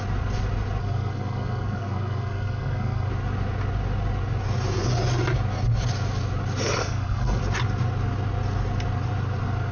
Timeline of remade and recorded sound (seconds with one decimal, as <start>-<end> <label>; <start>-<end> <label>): 0.0-0.8 recorded; 0.8-3.1 remade; 3.1-6.8 recorded; 6.8-7.4 remade; 7.4-9.7 recorded